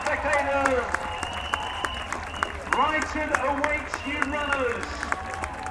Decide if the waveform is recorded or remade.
remade